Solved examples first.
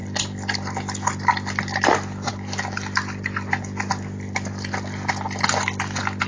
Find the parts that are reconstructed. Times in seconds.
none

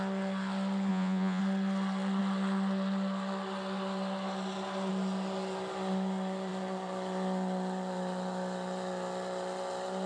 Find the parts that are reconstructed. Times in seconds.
0.9-1.4 (vocoder, Vocos)

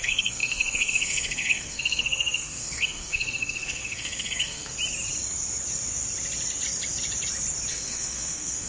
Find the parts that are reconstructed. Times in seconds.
0.0-4.7 (codec, SNAC); 7.7-8.7